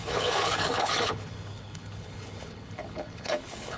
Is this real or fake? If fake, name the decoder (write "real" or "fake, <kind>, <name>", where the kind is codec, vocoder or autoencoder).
fake, codec, HILCodec